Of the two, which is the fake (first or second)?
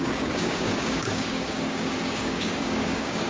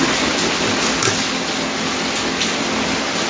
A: first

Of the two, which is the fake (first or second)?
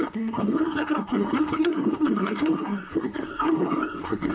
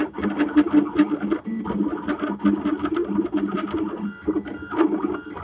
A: first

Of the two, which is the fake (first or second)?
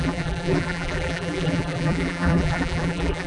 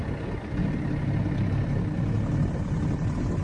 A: first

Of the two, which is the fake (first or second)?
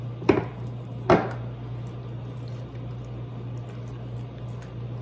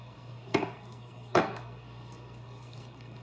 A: second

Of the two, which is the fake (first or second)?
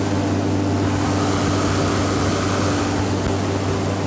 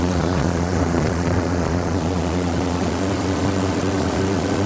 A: second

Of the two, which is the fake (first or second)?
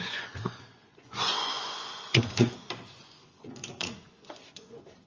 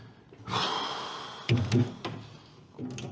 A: first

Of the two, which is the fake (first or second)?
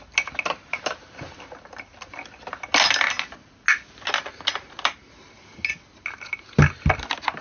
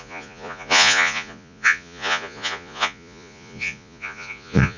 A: second